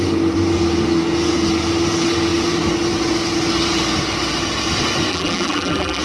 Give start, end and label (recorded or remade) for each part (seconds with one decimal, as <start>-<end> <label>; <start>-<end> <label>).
0.0-5.1 recorded; 5.1-6.0 remade